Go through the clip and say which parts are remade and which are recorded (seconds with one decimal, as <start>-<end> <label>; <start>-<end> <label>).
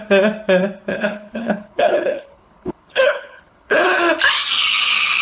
0.0-0.9 recorded; 0.9-4.0 remade; 4.0-5.2 recorded